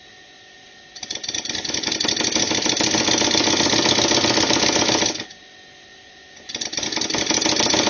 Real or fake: real